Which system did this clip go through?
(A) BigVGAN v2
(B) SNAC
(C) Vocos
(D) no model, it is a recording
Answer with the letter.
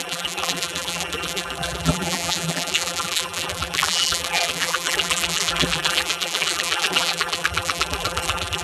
A